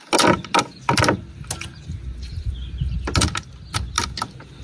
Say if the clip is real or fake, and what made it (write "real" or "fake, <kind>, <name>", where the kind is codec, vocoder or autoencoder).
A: real